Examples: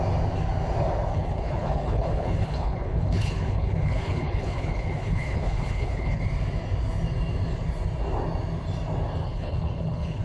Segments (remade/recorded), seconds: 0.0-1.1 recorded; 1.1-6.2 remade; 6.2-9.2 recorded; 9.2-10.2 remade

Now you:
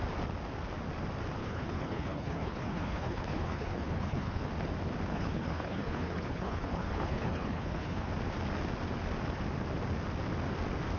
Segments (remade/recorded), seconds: 0.0-1.4 recorded; 1.4-4.5 remade; 4.5-5.1 recorded; 5.1-8.1 remade; 8.1-11.0 recorded

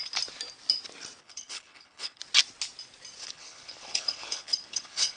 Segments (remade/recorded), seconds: 0.0-1.2 recorded; 1.2-2.2 remade; 2.2-3.2 recorded; 3.2-5.2 remade

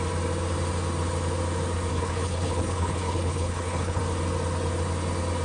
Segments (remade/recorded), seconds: 0.0-1.9 recorded; 1.9-4.0 remade; 4.0-5.4 recorded

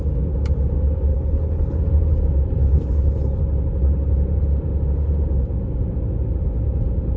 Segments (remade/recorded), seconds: 0.0-1.1 recorded; 1.1-1.8 remade; 1.8-2.6 recorded; 2.6-3.4 remade; 3.4-7.2 recorded

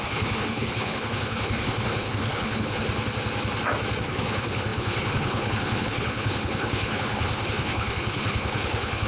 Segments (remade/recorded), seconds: 0.0-2.8 remade; 2.8-4.0 recorded; 4.0-9.1 remade

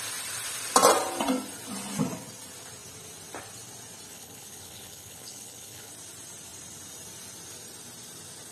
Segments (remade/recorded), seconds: 0.0-4.1 recorded; 4.1-5.9 remade; 5.9-8.5 recorded

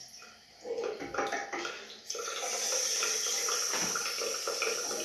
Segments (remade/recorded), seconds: 0.0-5.0 recorded